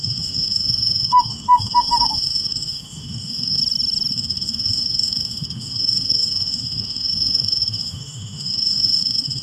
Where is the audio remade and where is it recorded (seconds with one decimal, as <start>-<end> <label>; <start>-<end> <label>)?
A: 0.0-3.6 remade; 3.6-4.1 recorded; 4.1-9.4 remade